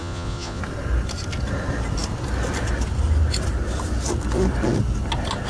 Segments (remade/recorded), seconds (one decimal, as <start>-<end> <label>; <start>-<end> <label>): 0.0-0.6 remade; 0.6-5.5 recorded